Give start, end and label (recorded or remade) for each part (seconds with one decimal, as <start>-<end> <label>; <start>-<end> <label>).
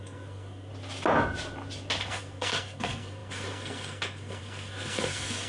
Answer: 0.0-0.7 remade; 0.7-2.0 recorded; 2.0-5.5 remade